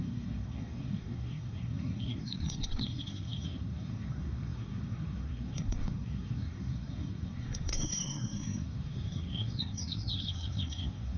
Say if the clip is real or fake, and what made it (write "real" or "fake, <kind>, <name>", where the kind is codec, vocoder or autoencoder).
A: fake, codec, SNAC